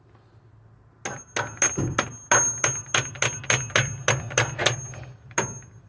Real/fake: real